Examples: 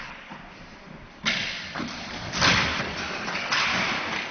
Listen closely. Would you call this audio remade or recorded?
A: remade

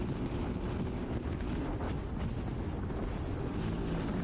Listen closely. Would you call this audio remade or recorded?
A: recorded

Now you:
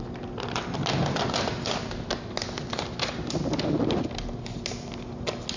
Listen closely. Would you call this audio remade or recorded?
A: recorded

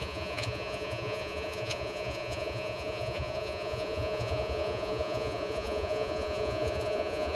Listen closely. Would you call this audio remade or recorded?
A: remade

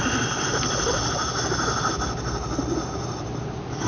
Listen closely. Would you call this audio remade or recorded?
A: recorded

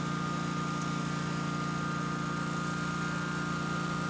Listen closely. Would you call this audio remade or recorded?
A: recorded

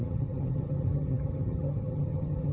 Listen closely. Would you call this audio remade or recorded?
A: remade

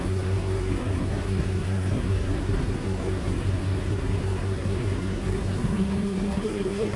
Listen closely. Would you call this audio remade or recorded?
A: remade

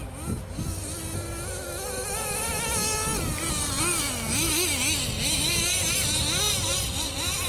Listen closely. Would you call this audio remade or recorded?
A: recorded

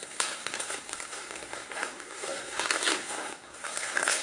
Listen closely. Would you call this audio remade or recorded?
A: remade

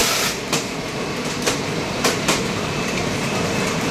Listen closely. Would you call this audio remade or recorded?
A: remade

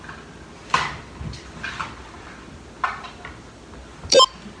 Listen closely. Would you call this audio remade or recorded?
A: recorded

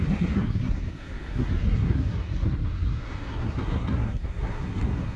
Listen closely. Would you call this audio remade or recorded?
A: remade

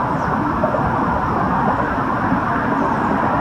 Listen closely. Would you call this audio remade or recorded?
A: recorded